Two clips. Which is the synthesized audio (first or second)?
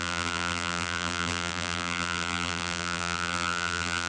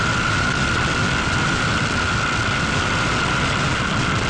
first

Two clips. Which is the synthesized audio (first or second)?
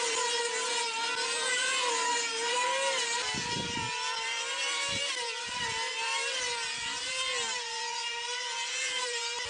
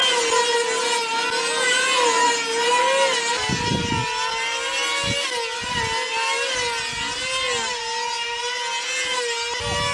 first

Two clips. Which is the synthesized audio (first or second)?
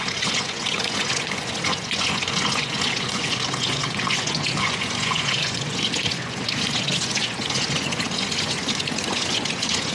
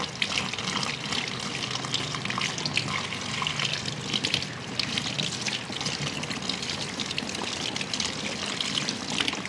first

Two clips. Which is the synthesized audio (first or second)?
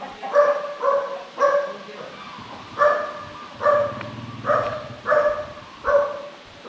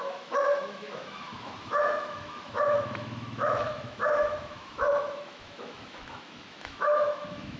second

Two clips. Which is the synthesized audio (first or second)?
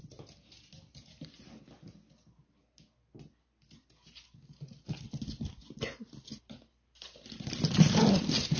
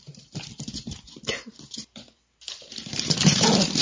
second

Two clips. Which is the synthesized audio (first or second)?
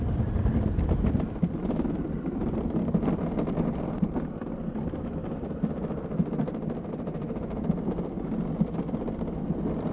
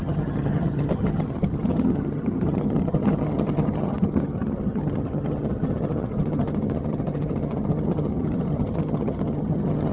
second